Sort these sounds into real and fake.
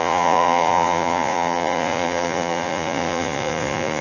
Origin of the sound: fake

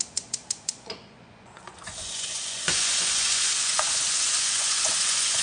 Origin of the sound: fake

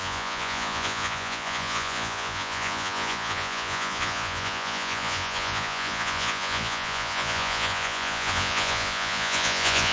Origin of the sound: fake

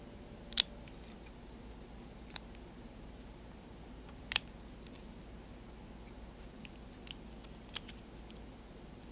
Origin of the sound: real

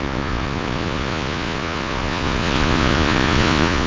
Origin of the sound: fake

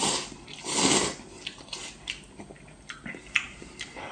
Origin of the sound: real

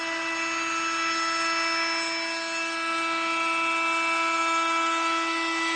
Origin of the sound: real